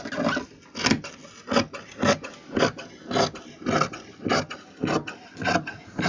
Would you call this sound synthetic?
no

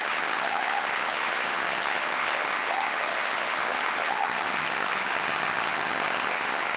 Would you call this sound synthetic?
yes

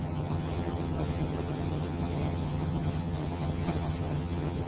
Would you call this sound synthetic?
yes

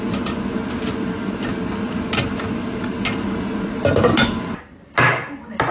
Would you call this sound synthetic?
no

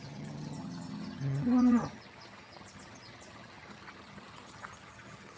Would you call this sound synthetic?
yes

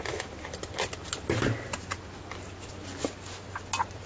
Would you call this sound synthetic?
no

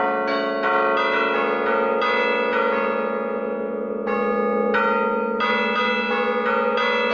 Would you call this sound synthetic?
no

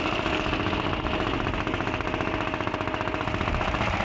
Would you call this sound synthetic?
no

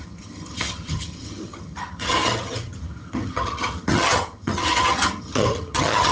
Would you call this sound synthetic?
yes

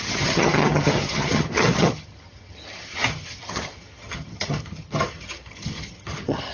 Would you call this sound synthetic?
yes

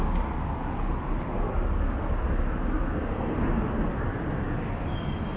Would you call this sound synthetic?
no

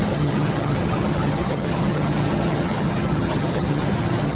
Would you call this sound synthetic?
yes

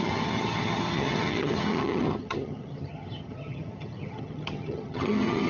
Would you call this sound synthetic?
yes